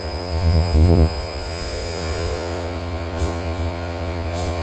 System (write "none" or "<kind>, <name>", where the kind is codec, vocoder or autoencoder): vocoder, Vocos